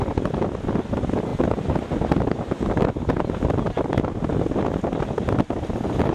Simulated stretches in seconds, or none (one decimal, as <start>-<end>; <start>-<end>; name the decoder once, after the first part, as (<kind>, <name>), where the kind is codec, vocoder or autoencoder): none